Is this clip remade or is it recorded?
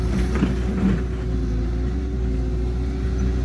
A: recorded